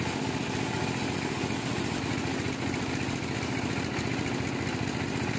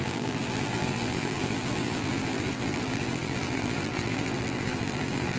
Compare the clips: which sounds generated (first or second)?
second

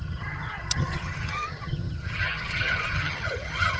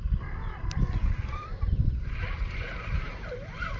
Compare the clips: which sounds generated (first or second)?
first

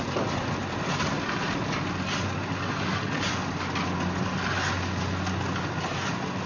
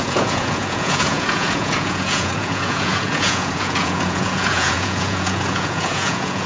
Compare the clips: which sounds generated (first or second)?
second